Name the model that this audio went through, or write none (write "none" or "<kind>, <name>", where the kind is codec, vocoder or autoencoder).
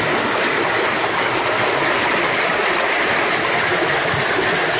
none